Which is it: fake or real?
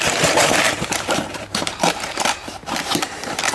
fake